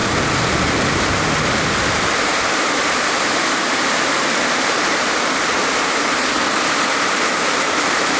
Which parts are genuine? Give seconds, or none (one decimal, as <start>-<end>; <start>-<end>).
0.0-0.5; 2.3-2.8; 5.6-7.3